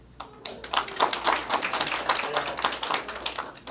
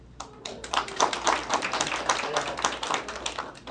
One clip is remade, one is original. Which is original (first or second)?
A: first